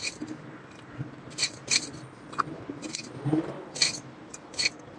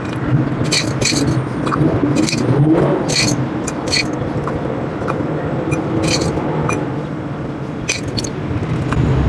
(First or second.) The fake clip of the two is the first